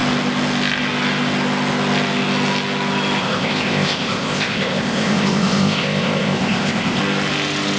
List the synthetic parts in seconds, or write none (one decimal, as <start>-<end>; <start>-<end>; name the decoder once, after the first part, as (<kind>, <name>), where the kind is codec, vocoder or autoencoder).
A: 3.2-7.0 (codec, ZipCodec)